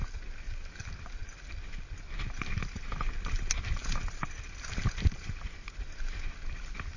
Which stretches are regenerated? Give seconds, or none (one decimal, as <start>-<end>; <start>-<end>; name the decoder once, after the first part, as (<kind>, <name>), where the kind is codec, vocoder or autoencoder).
none